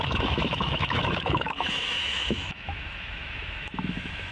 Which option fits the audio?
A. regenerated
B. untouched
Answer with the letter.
A